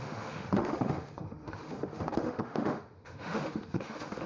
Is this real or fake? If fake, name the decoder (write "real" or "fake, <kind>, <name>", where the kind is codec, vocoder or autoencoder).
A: fake, autoencoder, DAC-VAE